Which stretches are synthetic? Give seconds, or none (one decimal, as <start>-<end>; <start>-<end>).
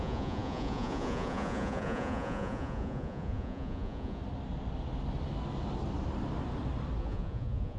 0.0-4.2; 7.0-7.8